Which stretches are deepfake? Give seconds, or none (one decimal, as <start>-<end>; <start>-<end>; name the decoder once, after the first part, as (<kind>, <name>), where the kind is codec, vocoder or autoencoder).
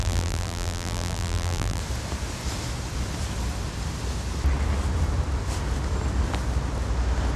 0.0-1.8 (vocoder, BigVGAN v2)